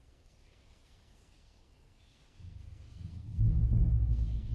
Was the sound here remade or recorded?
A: remade